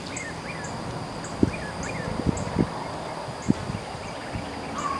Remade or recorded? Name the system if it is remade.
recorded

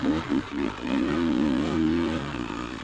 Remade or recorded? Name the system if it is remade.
remade, vocoder, Vocos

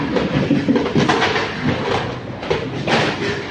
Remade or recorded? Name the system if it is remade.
recorded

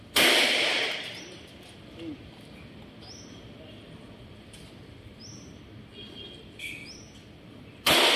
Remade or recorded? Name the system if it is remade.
recorded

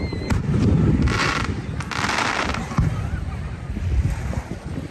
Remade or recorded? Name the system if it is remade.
recorded